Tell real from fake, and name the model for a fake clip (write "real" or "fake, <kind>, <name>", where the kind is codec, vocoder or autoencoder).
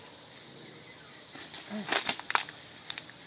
real